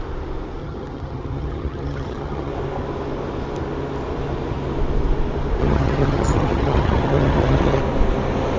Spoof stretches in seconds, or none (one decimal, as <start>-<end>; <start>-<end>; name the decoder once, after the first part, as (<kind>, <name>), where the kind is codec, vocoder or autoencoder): 0.6-2.5 (vocoder, HiFi-GAN); 5.6-7.8